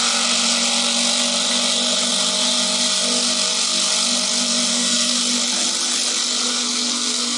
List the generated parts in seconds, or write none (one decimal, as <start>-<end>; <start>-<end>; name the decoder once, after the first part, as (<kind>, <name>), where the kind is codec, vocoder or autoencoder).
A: 4.7-5.2 (codec, SNAC); 6.5-7.4